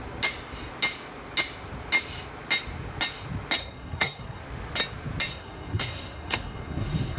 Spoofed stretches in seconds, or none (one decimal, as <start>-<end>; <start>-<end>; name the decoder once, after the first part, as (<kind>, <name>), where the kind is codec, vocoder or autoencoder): 3.6-4.4 (codec, SNAC); 5.3-7.2